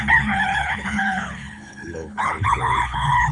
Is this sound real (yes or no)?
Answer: no